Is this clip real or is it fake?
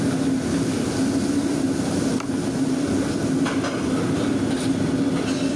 real